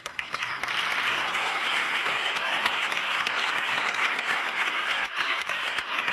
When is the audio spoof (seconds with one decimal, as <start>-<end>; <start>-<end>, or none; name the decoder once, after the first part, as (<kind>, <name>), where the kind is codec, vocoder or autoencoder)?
0.0-0.6 (codec, SNAC); 1.1-6.1